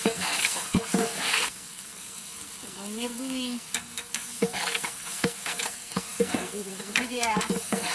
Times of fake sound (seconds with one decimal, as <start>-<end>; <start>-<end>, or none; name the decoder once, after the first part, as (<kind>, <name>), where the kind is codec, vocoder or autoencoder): 0.0-7.9 (codec, SNAC)